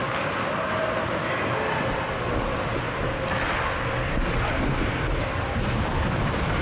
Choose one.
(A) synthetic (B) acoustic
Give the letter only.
B